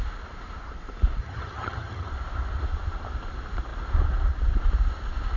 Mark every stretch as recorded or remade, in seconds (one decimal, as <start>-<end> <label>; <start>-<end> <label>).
0.0-1.2 recorded; 1.2-2.1 remade; 2.1-5.4 recorded